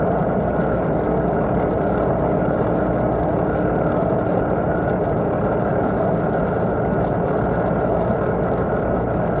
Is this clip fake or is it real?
real